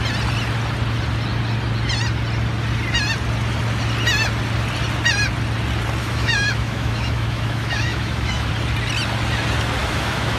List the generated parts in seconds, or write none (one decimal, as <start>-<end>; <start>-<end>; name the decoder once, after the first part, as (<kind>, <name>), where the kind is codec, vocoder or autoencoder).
6.0-8.5 (autoencoder, DAC-VAE); 9.8-10.4